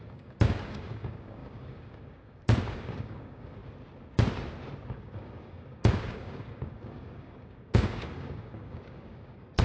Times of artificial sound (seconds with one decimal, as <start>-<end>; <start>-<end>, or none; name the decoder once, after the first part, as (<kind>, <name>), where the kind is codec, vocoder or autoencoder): 0.0-3.6 (codec, DAC); 4.9-9.6